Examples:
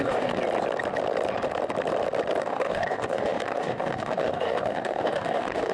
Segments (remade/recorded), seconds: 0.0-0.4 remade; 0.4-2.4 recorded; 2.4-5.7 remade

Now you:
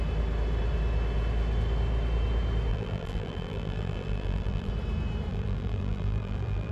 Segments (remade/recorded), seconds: 0.0-2.7 recorded; 2.7-4.7 remade; 4.7-5.3 recorded; 5.3-6.7 remade

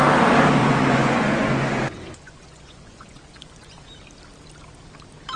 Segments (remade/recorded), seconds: 0.0-0.6 recorded; 0.6-3.8 remade; 3.8-5.4 recorded

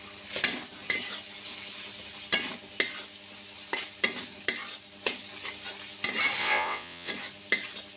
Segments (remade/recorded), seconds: 0.0-6.4 recorded; 6.4-7.1 remade; 7.1-8.0 recorded